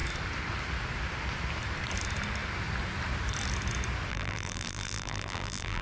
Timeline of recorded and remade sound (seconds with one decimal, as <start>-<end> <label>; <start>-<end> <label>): 0.0-4.1 recorded; 4.1-5.8 remade